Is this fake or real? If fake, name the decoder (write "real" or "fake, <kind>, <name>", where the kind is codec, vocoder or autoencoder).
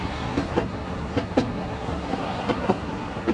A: fake, codec, SNAC